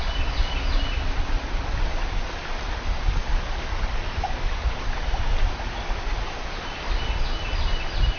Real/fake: real